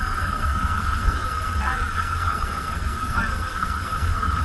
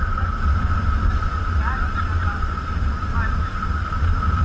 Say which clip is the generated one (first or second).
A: first